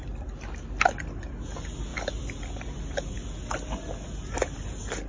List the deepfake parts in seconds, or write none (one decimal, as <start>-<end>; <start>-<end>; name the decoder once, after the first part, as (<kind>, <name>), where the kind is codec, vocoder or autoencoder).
none